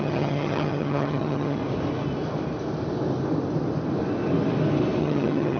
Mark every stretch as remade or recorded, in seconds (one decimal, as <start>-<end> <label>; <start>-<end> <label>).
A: 0.0-1.6 remade; 1.6-5.0 recorded; 5.0-5.6 remade